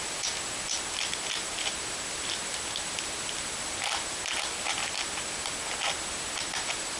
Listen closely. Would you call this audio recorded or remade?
recorded